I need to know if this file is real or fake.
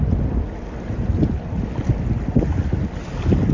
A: real